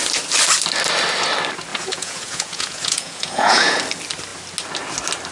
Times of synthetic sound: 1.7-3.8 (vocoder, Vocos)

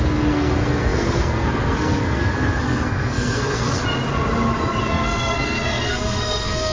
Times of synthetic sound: 0.0-3.8 (codec, SNAC); 4.8-6.7

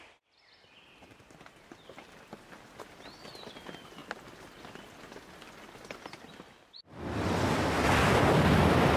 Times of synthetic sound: none

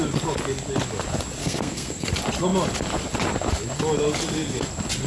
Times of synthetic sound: 1.4-2.1 (codec, SNAC)

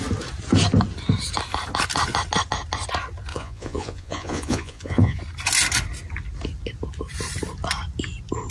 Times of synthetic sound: 3.3-5.2 (vocoder, Vocos)